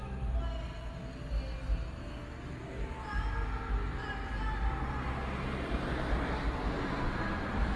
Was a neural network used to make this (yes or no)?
no